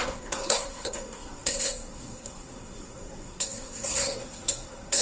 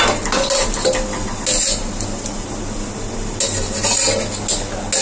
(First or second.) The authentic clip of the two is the second